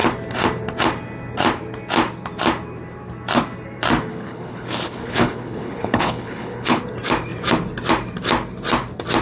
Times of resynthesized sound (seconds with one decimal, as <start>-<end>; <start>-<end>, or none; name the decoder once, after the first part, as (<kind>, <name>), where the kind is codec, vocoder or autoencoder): 4.1-6.8 (codec, HILCodec)